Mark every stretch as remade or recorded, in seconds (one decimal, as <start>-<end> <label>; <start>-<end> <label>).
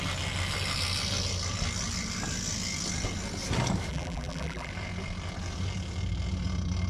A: 0.0-3.9 recorded; 3.9-4.7 remade; 4.7-6.9 recorded